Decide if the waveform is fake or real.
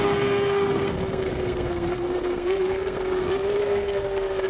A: fake